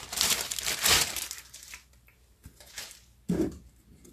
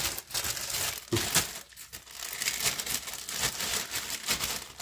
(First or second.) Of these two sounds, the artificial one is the first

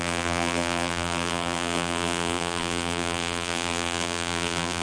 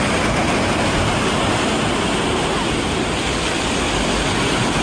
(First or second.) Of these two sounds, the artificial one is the first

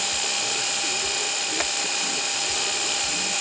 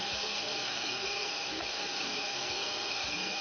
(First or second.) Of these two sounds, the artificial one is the second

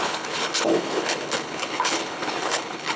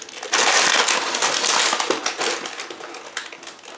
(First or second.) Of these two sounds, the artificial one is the first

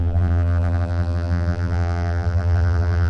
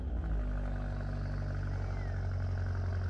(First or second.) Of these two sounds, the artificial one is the first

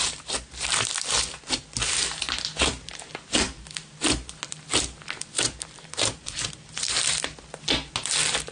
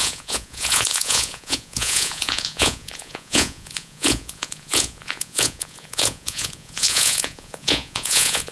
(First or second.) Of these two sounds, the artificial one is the second